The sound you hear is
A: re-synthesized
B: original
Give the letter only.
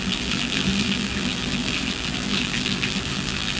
A